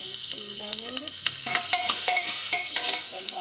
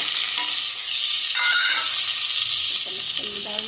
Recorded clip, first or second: second